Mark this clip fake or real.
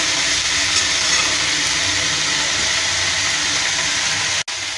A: real